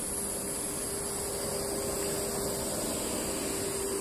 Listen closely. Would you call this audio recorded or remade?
recorded